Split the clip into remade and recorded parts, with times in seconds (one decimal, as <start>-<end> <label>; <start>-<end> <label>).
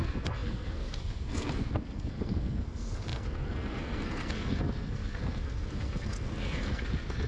0.0-7.3 remade